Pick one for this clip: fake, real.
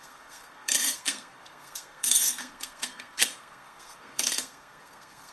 fake